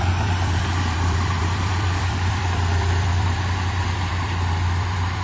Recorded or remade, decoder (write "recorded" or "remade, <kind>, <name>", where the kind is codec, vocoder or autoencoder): remade, vocoder, BigVGAN v2